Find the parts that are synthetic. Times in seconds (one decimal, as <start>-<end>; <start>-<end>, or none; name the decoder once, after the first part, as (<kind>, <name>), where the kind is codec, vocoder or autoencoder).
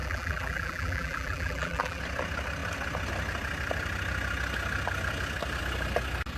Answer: 0.0-2.0 (vocoder, BigVGAN v2)